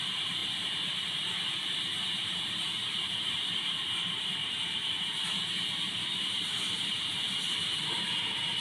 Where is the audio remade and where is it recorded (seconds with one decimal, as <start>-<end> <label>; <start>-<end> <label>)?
0.0-8.6 remade